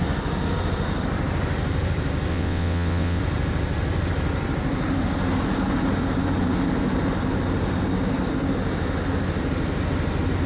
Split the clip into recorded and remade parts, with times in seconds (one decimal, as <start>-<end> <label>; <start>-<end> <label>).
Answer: 0.0-2.3 recorded; 2.3-3.2 remade; 3.2-10.5 recorded